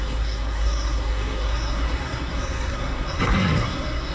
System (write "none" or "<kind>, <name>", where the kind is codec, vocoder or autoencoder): codec, SNAC